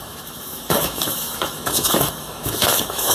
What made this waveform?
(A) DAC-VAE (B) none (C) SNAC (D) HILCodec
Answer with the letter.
A